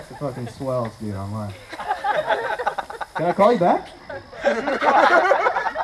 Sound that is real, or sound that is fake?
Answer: real